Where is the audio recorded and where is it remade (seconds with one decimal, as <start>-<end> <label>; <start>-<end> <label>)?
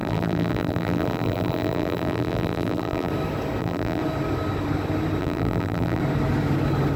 0.0-3.1 remade; 3.1-3.6 recorded; 3.6-4.0 remade; 4.0-5.2 recorded; 5.2-6.0 remade; 6.0-7.0 recorded